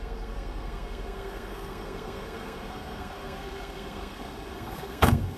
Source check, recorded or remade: remade